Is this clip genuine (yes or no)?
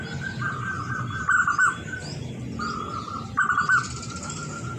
yes